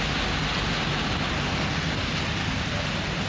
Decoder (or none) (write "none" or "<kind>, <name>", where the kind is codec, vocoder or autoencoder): none